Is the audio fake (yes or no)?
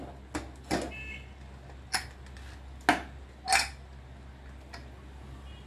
no